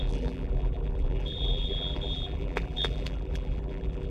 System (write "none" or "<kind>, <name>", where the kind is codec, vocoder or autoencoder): vocoder, BigVGAN v2